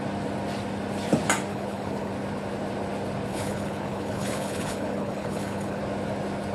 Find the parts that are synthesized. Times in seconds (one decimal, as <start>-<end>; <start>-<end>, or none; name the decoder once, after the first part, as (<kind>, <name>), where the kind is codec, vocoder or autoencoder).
1.5-2.1 (codec, HILCodec); 3.3-5.8